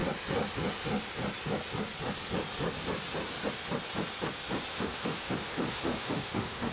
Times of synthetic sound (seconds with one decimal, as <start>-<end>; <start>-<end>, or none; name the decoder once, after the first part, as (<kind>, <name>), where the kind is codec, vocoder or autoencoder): 4.7-6.7 (autoencoder, DAC-VAE)